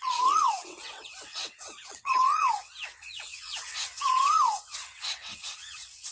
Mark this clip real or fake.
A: fake